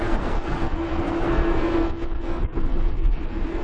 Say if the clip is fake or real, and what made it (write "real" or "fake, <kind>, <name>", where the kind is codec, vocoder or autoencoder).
fake, codec, SNAC